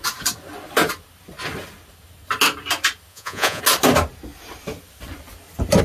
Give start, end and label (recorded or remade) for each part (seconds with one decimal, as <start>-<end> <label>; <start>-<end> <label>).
0.0-3.1 recorded; 3.1-3.6 remade; 3.6-5.8 recorded